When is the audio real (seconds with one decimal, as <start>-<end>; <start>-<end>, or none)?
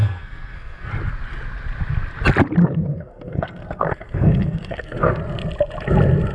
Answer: 0.9-2.6; 5.2-6.3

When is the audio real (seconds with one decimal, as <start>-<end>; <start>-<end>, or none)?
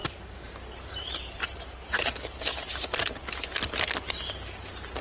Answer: 3.0-5.0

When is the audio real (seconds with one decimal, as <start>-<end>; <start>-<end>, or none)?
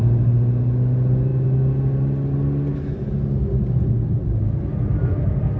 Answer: 0.0-5.6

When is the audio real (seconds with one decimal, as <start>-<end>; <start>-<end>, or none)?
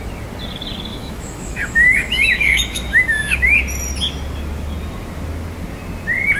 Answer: 0.0-0.9; 3.6-6.4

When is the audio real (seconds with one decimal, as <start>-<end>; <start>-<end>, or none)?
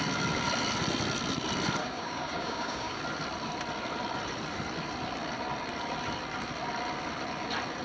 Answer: 0.0-1.8; 3.0-7.8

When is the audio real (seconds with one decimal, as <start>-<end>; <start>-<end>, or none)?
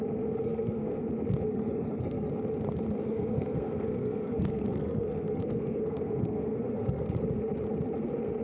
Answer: 0.0-0.4; 1.0-1.5; 2.3-3.0; 7.1-8.4